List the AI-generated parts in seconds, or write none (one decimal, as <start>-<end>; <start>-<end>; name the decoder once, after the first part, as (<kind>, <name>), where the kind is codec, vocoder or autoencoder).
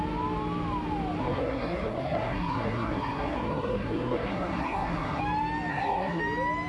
1.2-5.2 (codec, SNAC); 5.7-6.2